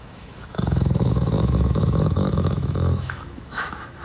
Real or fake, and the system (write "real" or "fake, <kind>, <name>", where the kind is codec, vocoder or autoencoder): fake, autoencoder, DAC-VAE